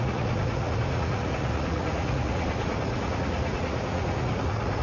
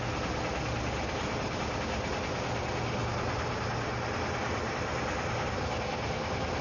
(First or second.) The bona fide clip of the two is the second